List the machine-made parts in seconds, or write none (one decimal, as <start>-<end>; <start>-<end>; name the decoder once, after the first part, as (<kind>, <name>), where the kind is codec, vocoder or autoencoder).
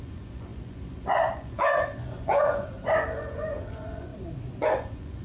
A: 0.0-4.1 (vocoder, Vocos); 4.6-5.2